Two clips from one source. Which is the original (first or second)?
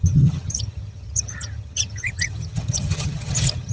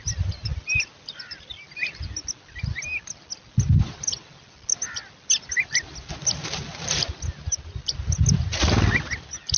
second